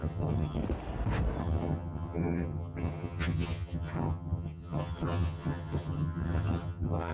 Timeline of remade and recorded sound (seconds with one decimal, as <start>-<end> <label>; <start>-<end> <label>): 0.0-0.6 remade; 0.6-1.4 recorded; 1.4-7.1 remade